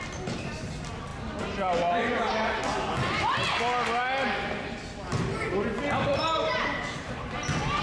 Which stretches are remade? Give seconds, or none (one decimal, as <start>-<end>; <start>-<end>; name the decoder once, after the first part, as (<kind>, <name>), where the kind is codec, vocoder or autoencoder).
6.1-7.1 (vocoder, BigVGAN v2)